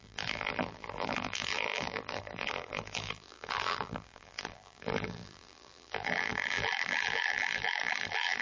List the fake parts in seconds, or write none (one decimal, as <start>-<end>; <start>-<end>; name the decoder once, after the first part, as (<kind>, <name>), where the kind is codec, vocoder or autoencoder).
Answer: 0.0-8.4 (vocoder, BigVGAN v2)